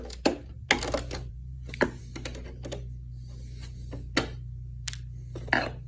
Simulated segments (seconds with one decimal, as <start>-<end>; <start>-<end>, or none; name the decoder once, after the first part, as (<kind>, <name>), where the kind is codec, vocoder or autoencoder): 1.3-2.0 (vocoder, BigVGAN v2)